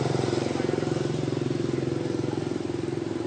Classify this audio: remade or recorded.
recorded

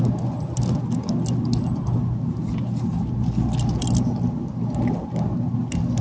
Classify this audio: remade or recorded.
recorded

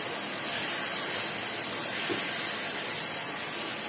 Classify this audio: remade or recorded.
recorded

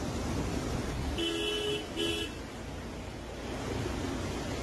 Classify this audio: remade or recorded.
recorded